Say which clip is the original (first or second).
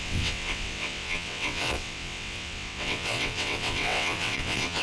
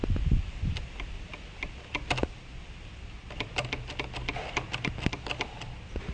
second